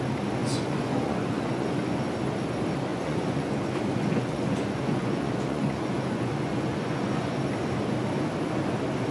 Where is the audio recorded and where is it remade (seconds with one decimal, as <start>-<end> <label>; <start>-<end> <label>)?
0.0-0.4 recorded; 0.4-2.0 remade; 2.0-2.9 recorded; 2.9-7.4 remade; 7.4-9.1 recorded